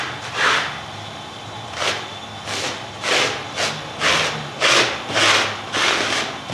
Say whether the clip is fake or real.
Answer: real